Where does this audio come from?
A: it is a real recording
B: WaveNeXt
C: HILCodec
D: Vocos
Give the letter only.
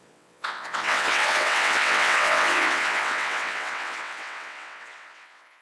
B